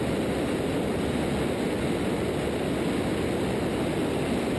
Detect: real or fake real